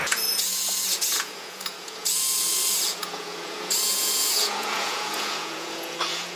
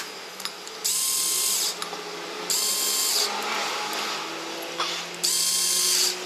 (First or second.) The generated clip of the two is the first